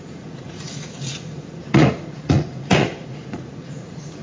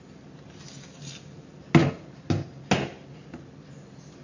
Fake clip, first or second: first